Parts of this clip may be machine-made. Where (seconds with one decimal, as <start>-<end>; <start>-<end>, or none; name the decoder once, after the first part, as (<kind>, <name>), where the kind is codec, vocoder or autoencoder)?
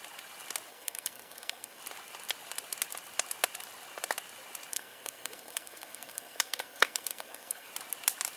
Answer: 0.7-1.8 (codec, SNAC); 4.7-7.7